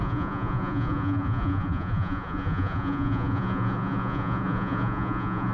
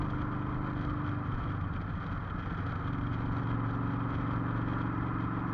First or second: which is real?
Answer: second